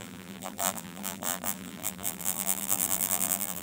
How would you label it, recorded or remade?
remade